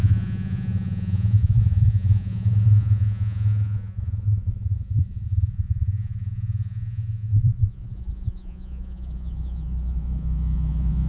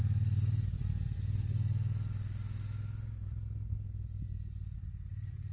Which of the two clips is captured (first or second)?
second